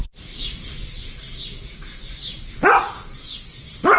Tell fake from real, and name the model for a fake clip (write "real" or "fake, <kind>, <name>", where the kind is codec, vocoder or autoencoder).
real